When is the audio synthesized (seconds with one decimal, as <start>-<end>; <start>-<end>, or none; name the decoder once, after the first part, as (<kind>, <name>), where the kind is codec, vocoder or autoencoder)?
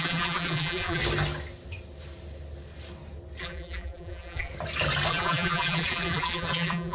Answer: 0.0-1.0 (vocoder, BigVGAN v2); 3.4-4.5; 5.1-6.9